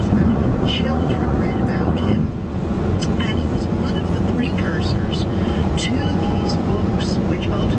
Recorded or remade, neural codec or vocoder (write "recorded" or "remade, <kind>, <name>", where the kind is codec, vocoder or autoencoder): remade, vocoder, Vocos